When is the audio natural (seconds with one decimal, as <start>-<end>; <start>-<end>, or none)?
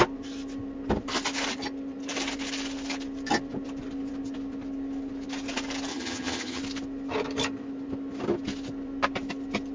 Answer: 0.0-5.9; 6.6-9.7